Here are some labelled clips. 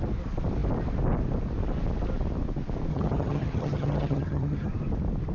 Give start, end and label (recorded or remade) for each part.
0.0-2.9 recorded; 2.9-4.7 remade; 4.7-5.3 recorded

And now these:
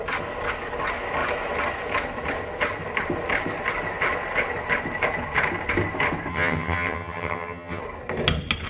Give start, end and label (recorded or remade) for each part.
0.0-6.3 recorded; 6.3-7.8 remade; 7.8-8.7 recorded

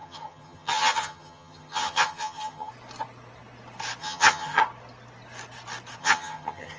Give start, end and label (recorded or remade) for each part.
0.0-2.7 remade; 2.7-4.0 recorded; 4.0-4.6 remade; 4.6-6.0 recorded; 6.0-6.8 remade